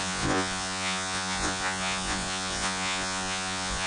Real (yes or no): no